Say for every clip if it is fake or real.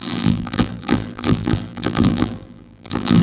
fake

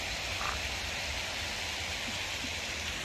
real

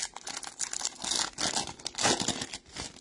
real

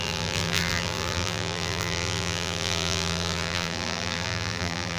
fake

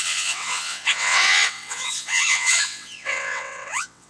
fake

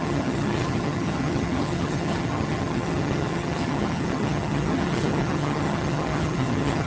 fake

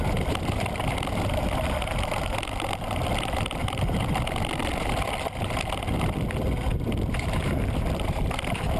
real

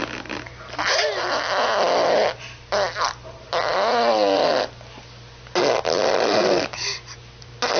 real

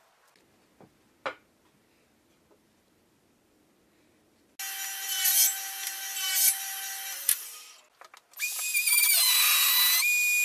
real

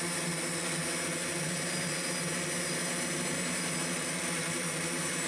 real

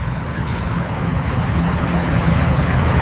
fake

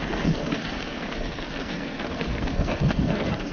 fake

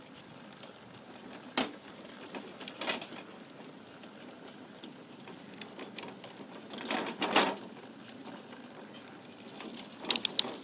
real